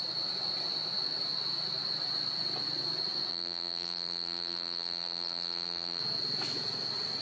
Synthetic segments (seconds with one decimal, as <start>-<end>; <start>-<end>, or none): 3.3-6.0